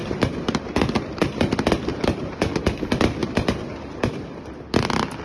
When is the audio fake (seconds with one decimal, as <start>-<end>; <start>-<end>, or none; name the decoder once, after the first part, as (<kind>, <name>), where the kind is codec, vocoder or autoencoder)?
0.0-1.5 (vocoder, BigVGAN v2); 1.9-2.5; 3.2-4.4